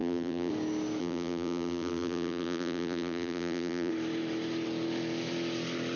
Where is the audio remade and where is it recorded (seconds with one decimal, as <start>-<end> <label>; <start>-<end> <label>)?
0.0-0.5 remade; 0.5-1.0 recorded; 1.0-3.9 remade; 3.9-6.0 recorded